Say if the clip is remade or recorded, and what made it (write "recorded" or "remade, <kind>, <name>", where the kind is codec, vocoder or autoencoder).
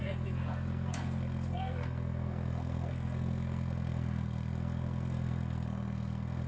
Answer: remade, codec, SNAC